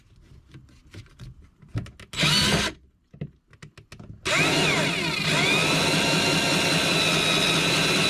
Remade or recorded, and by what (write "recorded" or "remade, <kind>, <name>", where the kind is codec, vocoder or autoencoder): recorded